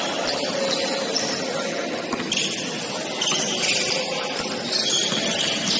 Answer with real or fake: real